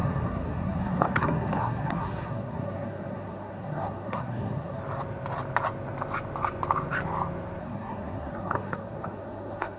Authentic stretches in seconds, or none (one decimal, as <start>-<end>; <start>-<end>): 4.8-7.6